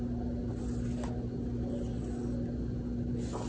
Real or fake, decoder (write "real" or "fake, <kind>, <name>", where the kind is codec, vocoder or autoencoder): real